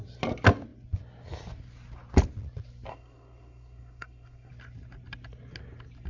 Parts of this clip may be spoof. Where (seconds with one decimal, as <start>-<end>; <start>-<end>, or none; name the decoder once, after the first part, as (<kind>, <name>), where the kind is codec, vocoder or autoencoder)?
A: 2.9-4.5 (codec, SNAC)